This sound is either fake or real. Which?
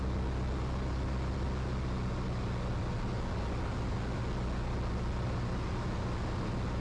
real